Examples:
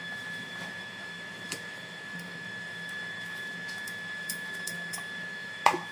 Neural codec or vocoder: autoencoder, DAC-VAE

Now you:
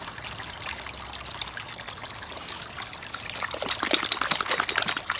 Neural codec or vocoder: none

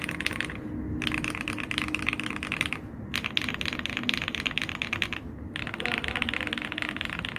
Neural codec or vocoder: none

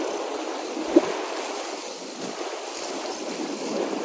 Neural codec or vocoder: none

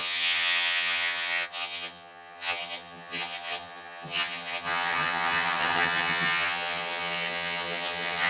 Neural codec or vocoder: vocoder, HiFi-GAN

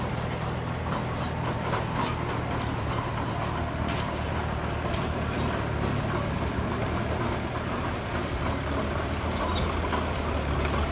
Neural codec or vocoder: none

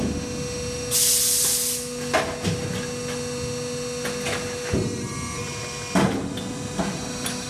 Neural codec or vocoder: none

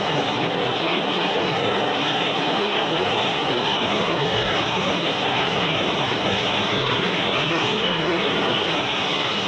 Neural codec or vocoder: codec, SNAC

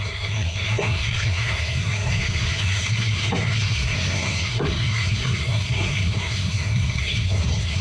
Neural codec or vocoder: codec, SNAC